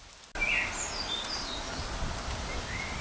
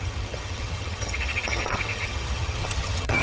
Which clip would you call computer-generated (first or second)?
second